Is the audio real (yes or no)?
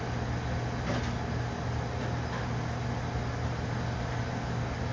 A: yes